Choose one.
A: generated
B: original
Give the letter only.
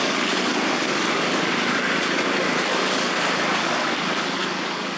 A